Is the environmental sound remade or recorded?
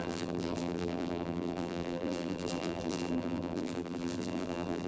remade